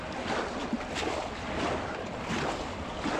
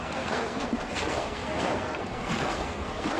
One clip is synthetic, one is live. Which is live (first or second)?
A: first